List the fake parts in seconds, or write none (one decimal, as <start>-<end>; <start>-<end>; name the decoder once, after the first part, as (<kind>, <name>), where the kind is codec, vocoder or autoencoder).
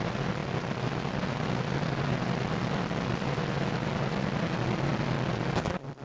none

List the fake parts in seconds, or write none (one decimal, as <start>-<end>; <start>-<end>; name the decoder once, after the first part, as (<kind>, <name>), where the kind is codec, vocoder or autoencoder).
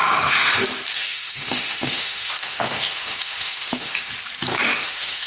0.0-0.5 (autoencoder, DAC-VAE); 0.9-4.1; 4.5-5.3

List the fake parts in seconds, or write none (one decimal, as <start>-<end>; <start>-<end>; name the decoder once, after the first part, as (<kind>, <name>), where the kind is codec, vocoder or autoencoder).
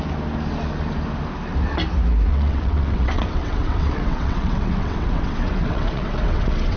2.3-6.8 (vocoder, WaveNeXt)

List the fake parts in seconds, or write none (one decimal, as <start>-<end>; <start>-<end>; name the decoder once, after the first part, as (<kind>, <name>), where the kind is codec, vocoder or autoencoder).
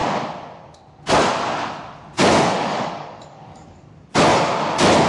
2.3-3.9 (codec, DAC)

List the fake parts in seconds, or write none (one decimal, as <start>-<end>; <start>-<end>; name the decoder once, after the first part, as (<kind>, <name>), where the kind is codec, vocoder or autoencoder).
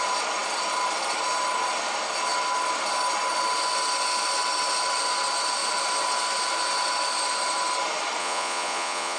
8.2-9.2 (vocoder, Vocos)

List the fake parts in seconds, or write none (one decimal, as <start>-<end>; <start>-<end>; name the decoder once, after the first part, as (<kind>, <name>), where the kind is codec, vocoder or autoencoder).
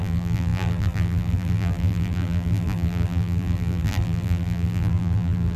0.0-5.6 (vocoder, BigVGAN v2)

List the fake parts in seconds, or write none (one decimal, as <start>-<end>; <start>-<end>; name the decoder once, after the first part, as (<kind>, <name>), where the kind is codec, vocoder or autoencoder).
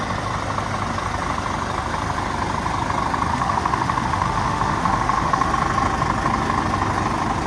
3.3-5.5 (autoencoder, DAC-VAE)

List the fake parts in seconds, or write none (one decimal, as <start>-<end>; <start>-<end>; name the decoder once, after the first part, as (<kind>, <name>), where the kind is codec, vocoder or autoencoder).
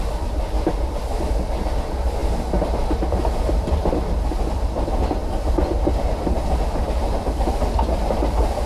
none